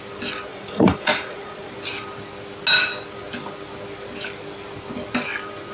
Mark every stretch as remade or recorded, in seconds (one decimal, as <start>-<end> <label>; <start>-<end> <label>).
0.0-0.5 recorded; 0.5-1.7 remade; 1.7-5.7 recorded

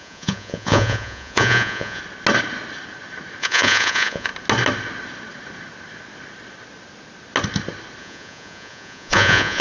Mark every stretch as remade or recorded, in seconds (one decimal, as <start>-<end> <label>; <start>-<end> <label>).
0.0-2.0 remade; 2.0-3.4 recorded; 3.4-4.3 remade; 4.3-8.0 recorded; 8.0-9.6 remade

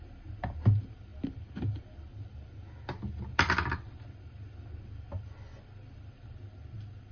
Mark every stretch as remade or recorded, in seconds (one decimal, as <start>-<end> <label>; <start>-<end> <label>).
0.0-7.1 recorded

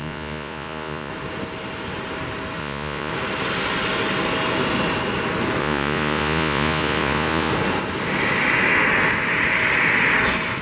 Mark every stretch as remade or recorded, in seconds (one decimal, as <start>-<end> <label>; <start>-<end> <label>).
0.0-1.1 remade; 1.1-2.6 recorded; 2.6-3.1 remade; 3.1-5.6 recorded; 5.6-7.5 remade; 7.5-10.6 recorded

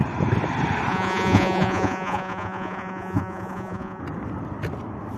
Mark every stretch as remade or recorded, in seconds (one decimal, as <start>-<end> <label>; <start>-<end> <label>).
0.0-0.9 recorded; 0.9-4.0 remade; 4.0-5.2 recorded

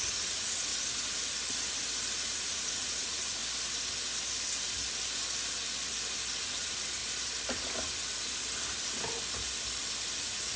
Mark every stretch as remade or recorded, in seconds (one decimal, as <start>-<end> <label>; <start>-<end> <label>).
0.0-0.7 remade; 0.7-2.2 recorded; 2.2-3.4 remade; 3.4-6.4 recorded; 6.4-7.0 remade; 7.0-10.2 recorded; 10.2-10.6 remade